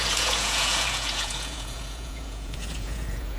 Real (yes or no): no